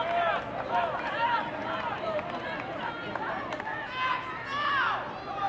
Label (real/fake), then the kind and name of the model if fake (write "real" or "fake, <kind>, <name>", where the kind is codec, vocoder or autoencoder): real